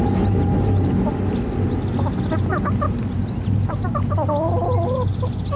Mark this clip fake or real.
real